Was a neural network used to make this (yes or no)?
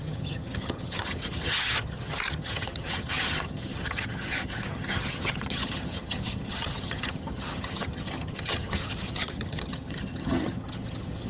yes